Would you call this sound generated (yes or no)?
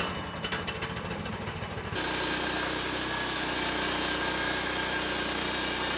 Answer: no